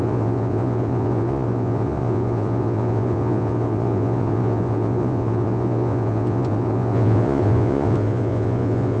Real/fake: fake